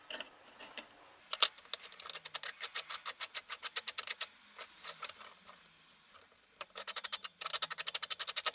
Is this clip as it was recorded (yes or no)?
yes